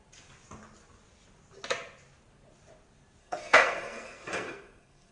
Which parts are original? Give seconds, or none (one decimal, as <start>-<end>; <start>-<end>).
0.0-3.2